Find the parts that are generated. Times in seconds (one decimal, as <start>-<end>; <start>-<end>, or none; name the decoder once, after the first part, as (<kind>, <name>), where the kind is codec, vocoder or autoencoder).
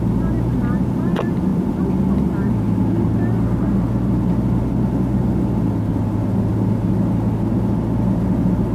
none